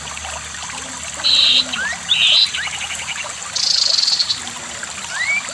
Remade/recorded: recorded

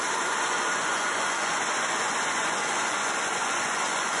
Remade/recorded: remade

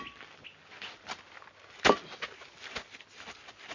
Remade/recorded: recorded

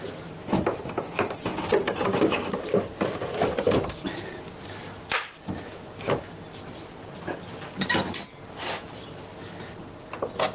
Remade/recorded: recorded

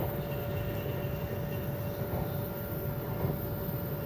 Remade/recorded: recorded